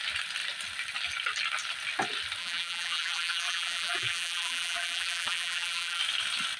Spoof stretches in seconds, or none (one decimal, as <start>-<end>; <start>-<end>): 2.4-6.0